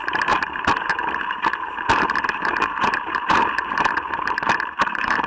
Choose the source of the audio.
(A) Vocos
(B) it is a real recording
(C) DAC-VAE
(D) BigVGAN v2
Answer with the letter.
D